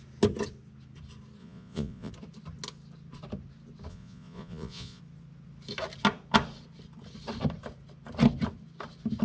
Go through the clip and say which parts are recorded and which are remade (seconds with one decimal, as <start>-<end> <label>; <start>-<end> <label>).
0.0-1.4 recorded; 1.4-2.1 remade; 2.1-3.9 recorded; 3.9-5.0 remade; 5.0-9.2 recorded